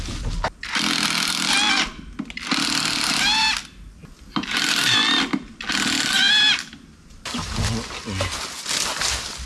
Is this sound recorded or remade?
recorded